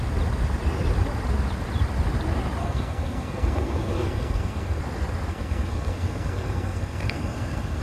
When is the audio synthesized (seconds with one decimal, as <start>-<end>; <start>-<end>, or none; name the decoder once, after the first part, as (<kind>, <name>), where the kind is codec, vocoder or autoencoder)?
2.6-4.8 (codec, SNAC); 5.3-7.8

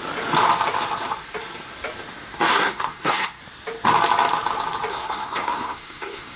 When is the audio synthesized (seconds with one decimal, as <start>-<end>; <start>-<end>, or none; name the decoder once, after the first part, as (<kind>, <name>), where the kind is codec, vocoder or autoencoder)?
2.5-3.4 (codec, SNAC); 4.9-6.4

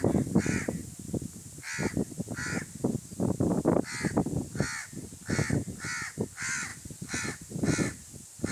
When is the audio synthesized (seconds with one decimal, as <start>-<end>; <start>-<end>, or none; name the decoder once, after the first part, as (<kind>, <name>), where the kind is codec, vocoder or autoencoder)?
none

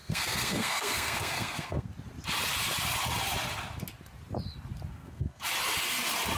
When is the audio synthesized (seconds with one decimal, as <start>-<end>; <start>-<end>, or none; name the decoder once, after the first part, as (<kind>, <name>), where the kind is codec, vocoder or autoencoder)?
0.0-1.9 (codec, SNAC); 4.9-5.4

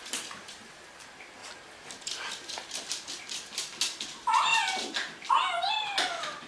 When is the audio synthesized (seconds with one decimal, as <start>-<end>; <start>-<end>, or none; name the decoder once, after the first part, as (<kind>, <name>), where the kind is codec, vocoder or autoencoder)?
none

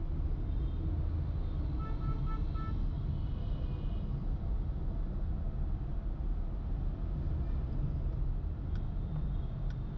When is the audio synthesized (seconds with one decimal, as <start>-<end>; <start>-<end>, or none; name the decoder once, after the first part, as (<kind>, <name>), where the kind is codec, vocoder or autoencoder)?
none

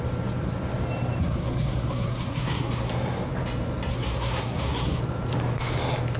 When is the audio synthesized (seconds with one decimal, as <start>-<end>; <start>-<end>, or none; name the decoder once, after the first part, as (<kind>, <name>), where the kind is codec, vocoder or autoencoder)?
1.2-2.9 (codec, SNAC); 3.9-5.0